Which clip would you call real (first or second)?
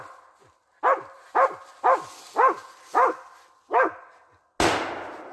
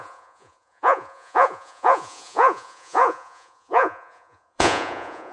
first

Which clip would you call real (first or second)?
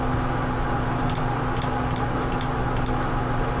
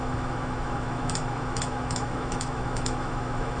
first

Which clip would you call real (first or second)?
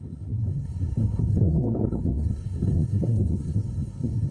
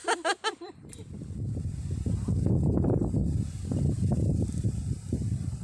second